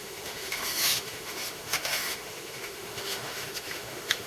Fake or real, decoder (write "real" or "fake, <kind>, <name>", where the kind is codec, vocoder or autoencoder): fake, autoencoder, DAC-VAE